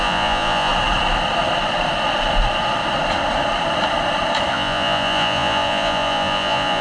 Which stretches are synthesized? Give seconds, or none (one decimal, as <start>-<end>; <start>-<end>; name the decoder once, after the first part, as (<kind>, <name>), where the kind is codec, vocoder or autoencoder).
0.0-0.7 (vocoder, Vocos); 4.5-6.8